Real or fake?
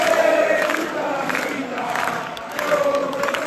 fake